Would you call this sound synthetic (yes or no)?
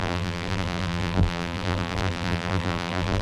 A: yes